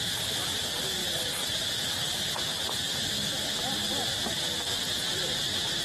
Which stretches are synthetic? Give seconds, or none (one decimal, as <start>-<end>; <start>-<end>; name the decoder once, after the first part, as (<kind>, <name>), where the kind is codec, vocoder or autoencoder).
1.0-1.9 (vocoder, BigVGAN v2)